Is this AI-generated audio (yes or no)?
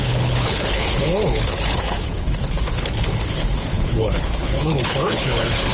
yes